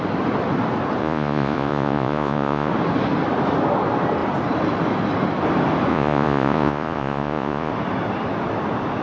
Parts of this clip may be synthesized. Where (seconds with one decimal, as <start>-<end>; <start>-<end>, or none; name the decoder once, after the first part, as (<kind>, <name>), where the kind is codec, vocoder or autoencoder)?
1.0-2.7 (vocoder, Vocos); 5.9-7.7